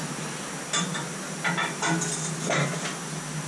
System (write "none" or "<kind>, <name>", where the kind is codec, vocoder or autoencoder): none